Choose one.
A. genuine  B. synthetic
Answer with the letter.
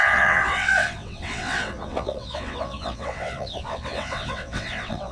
B